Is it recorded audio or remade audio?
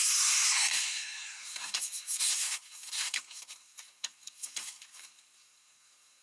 remade